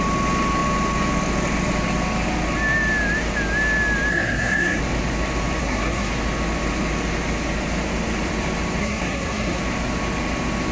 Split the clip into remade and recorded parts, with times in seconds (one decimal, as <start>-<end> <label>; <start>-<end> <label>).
0.0-4.1 recorded; 4.1-4.8 remade; 4.8-5.6 recorded; 5.6-6.1 remade; 6.1-8.8 recorded; 8.8-9.6 remade; 9.6-10.7 recorded